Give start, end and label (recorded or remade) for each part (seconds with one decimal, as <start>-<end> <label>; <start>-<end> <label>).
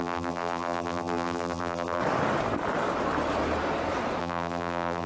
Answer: 0.0-2.0 remade; 2.0-4.2 recorded; 4.2-5.1 remade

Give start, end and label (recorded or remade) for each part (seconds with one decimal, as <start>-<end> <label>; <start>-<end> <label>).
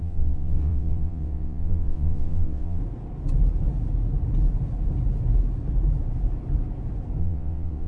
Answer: 0.0-2.8 remade; 2.8-7.2 recorded; 7.2-7.9 remade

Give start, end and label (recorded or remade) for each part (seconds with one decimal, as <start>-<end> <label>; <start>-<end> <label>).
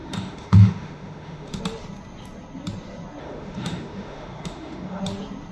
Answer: 0.0-1.6 remade; 1.6-3.2 recorded; 3.2-5.0 remade; 5.0-5.5 recorded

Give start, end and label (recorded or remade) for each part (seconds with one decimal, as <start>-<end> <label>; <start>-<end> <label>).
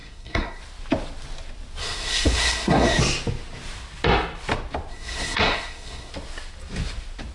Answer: 0.0-0.6 remade; 0.6-1.8 recorded; 1.8-3.0 remade; 3.0-4.9 recorded; 4.9-6.1 remade; 6.1-7.3 recorded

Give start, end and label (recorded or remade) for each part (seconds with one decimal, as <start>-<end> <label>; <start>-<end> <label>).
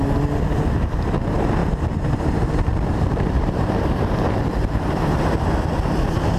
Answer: 0.0-1.6 recorded; 1.6-5.2 remade; 5.2-6.4 recorded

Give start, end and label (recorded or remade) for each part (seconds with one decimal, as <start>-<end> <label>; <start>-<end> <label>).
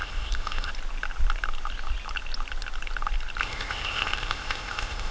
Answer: 0.0-0.7 remade; 0.7-3.4 recorded; 3.4-5.1 remade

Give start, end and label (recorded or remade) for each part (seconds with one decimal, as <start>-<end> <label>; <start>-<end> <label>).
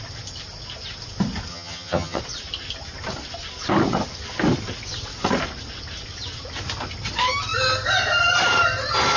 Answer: 0.0-1.5 recorded; 1.5-2.2 remade; 2.2-9.2 recorded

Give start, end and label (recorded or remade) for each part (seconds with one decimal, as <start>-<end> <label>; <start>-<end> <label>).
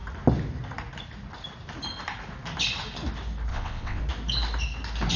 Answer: 0.0-3.5 recorded; 3.5-4.0 remade; 4.0-5.2 recorded